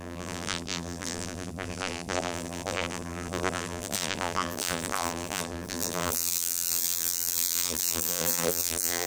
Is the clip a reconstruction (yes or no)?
yes